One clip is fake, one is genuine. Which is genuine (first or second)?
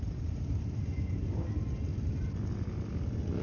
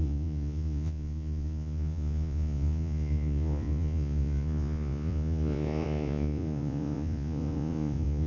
first